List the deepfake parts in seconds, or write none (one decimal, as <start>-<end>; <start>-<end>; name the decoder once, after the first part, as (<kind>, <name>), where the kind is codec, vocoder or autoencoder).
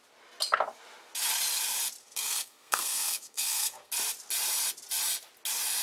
2.0-3.9 (codec, SNAC)